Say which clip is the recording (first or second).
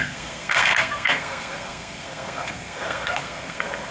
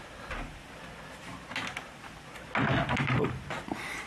second